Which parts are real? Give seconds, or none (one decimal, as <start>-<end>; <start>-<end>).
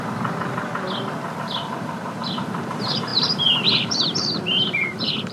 0.7-1.4